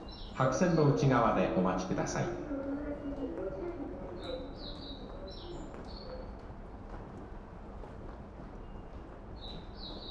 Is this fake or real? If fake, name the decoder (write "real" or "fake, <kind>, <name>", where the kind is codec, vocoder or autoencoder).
real